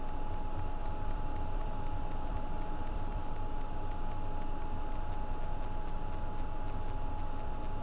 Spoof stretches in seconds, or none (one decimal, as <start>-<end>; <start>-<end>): 0.8-3.3